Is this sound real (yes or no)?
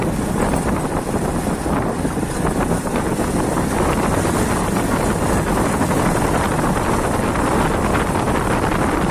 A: yes